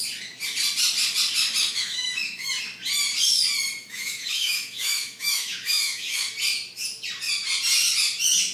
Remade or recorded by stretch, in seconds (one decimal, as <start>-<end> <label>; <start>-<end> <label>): 0.0-1.6 recorded; 1.6-2.5 remade; 2.5-3.8 recorded; 3.8-6.3 remade; 6.3-8.5 recorded